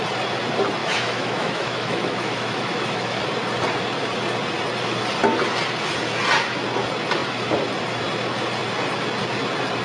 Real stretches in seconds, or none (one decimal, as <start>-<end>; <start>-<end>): 0.0-0.8; 3.2-9.8